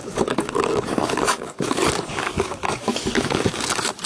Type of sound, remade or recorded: remade